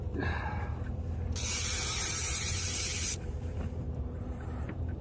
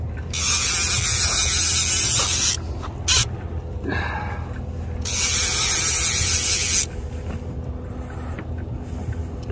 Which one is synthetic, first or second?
first